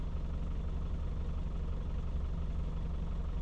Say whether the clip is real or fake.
real